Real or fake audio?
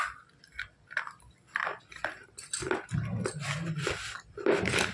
real